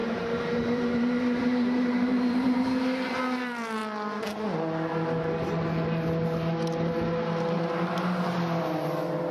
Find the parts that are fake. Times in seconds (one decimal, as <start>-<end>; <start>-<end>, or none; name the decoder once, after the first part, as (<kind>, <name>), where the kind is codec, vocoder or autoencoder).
0.0-3.2 (vocoder, BigVGAN v2)